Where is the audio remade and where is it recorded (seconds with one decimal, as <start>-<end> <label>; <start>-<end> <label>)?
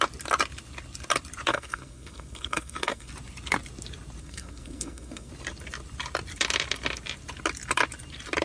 0.0-1.5 recorded; 1.5-3.1 remade; 3.1-4.2 recorded; 4.2-5.3 remade; 5.3-8.4 recorded